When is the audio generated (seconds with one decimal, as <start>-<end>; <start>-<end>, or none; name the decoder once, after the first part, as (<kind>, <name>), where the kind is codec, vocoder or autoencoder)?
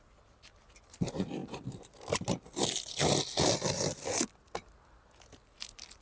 none